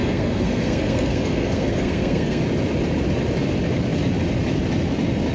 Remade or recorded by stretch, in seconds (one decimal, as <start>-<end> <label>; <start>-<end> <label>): 0.0-2.4 remade; 2.4-5.3 recorded